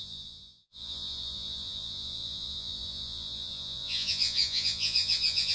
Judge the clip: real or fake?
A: fake